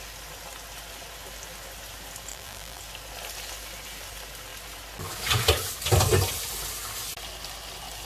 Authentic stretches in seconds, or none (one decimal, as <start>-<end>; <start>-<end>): 0.0-2.3; 2.8-8.1